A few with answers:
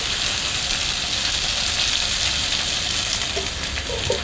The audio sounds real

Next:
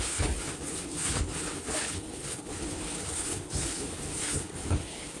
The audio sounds fake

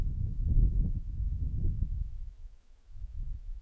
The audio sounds fake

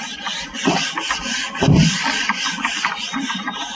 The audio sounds real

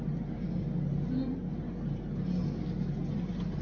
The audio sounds real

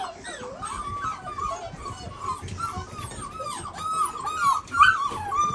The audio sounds real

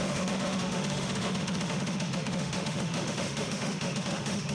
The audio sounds fake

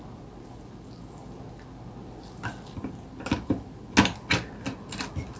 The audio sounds real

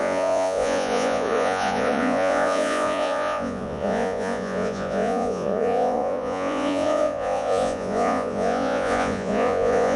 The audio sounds fake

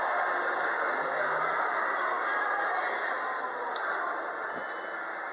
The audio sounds real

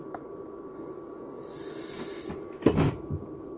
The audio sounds real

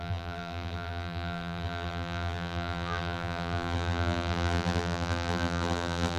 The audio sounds fake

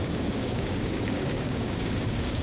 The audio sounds fake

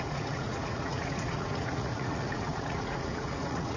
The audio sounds fake